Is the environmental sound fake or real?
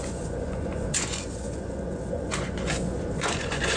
fake